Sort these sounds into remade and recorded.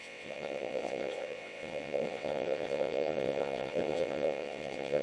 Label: remade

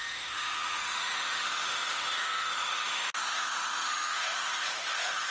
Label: remade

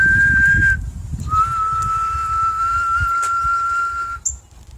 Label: recorded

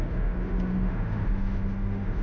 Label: remade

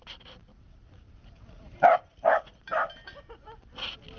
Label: recorded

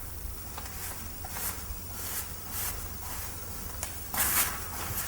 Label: recorded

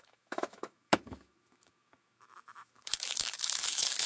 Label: remade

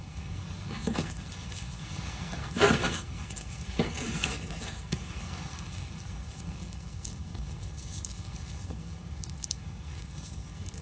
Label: remade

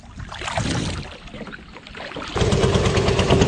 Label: remade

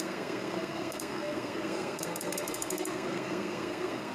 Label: remade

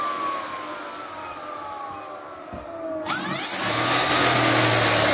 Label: recorded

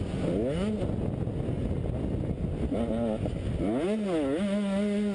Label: recorded